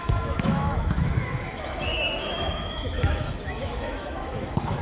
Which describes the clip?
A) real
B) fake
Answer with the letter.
B